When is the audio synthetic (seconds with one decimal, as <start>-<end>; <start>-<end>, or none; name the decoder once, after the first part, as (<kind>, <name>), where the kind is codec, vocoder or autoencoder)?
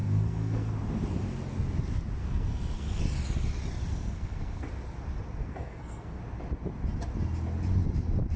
0.0-0.7 (codec, SNAC); 2.2-3.0; 3.9-4.7; 5.4-6.2